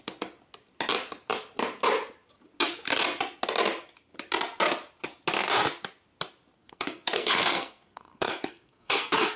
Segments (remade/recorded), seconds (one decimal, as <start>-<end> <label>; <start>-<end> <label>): 0.0-6.6 recorded; 6.6-9.4 remade